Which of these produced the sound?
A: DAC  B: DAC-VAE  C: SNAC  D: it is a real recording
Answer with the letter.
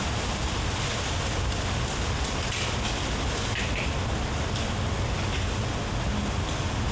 D